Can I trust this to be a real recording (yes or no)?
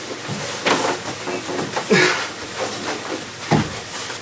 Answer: yes